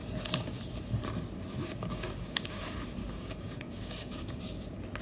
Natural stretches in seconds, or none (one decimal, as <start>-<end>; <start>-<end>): 0.6-1.6; 2.6-3.0; 4.4-5.0